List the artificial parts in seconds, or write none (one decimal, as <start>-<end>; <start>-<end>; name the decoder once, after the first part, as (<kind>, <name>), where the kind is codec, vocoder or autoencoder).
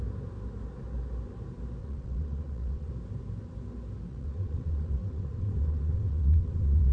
1.8-2.9 (vocoder, WaveNeXt); 4.1-6.9